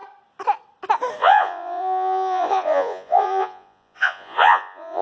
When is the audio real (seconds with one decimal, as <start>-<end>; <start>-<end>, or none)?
0.0-1.2